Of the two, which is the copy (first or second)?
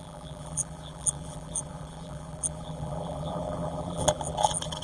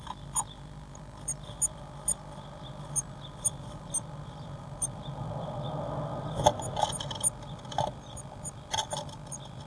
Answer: first